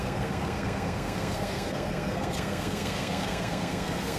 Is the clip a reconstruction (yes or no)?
yes